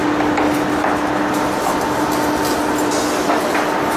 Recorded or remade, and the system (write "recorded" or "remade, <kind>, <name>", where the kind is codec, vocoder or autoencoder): recorded